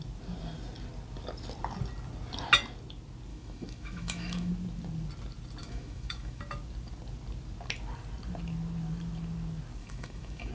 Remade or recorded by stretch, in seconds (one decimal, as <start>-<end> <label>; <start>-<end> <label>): 0.0-3.3 recorded; 3.3-4.5 remade; 4.5-5.6 recorded; 5.6-6.4 remade; 6.4-9.8 recorded; 9.8-10.5 remade